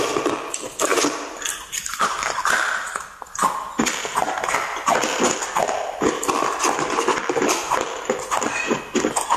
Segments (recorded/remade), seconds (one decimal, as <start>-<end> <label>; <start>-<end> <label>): 0.0-0.9 recorded; 0.9-2.4 remade; 2.4-9.4 recorded